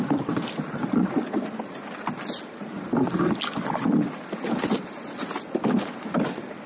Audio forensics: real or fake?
real